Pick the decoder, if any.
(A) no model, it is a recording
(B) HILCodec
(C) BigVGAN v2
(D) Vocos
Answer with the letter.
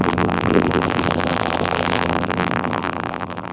C